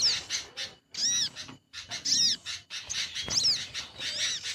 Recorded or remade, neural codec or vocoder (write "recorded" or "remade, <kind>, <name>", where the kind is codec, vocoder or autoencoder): recorded